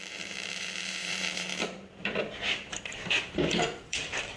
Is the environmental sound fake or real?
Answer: fake